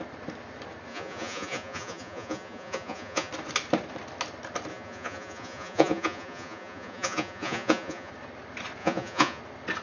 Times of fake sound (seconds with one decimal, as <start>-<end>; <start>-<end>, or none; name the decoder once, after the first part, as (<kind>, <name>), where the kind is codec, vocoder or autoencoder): 0.9-3.3 (vocoder, Vocos); 4.7-8.1; 8.8-9.4